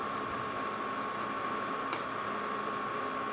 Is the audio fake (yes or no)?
no